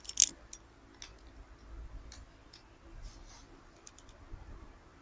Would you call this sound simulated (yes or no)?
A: no